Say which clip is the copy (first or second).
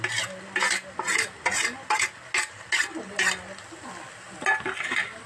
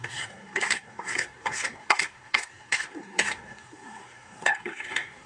second